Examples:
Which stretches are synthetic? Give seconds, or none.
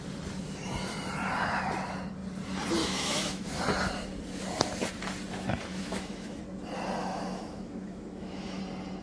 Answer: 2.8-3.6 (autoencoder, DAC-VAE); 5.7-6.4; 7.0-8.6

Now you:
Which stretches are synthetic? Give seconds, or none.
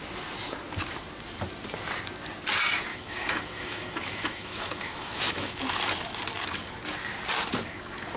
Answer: 2.9-5.6 (autoencoder, DAC-VAE)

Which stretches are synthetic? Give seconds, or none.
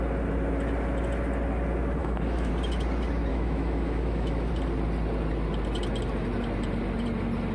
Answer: 2.0-2.5 (autoencoder, DAC-VAE); 3.3-4.5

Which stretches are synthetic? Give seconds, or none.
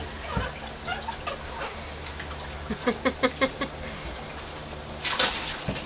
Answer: none